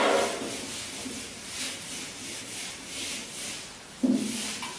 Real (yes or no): yes